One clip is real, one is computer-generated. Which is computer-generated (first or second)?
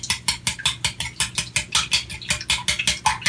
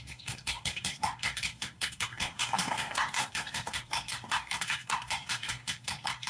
second